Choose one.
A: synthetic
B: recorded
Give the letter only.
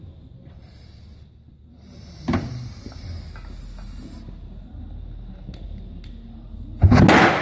B